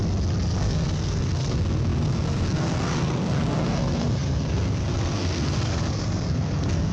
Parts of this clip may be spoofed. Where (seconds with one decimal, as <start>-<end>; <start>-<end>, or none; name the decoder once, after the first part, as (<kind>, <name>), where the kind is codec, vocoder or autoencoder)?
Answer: 0.6-6.9 (codec, SNAC)